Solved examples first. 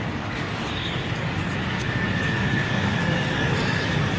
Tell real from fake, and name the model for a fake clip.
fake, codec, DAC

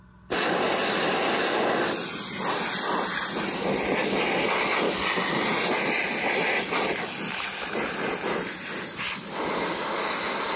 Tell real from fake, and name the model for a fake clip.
real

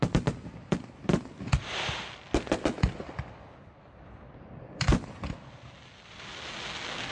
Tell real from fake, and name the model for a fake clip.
real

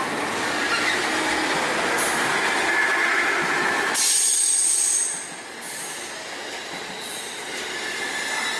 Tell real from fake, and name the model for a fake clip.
real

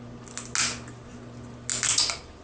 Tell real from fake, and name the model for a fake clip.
real